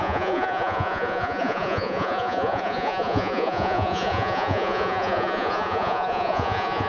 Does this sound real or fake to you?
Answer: fake